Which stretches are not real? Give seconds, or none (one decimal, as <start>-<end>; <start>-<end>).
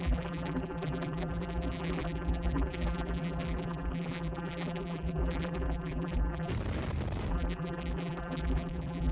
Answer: 0.0-6.5; 7.3-9.1